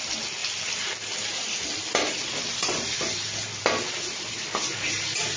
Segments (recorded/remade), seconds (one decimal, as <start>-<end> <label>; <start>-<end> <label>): 0.0-5.4 recorded